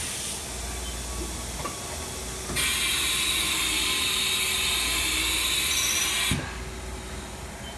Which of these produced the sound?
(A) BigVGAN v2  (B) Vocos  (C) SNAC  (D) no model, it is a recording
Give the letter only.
D